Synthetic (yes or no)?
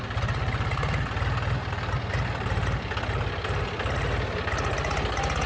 no